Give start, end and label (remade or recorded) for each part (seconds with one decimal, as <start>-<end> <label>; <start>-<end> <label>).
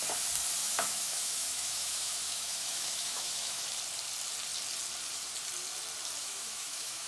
0.0-0.6 recorded; 0.6-3.6 remade; 3.6-6.2 recorded; 6.2-7.1 remade